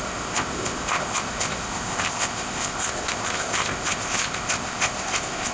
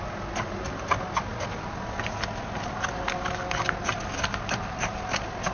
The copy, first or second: first